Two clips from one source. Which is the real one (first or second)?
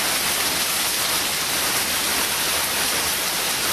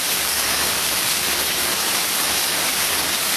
first